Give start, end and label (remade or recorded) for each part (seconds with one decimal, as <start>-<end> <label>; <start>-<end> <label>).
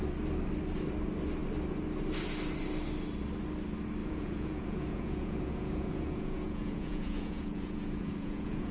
0.0-4.0 recorded; 4.0-8.7 remade